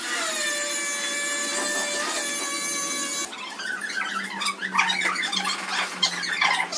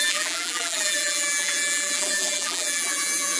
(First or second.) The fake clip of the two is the second